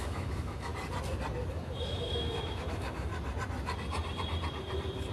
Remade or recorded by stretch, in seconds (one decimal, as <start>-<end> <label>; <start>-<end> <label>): 0.0-0.7 remade; 0.7-1.5 recorded; 1.5-3.1 remade; 3.1-5.1 recorded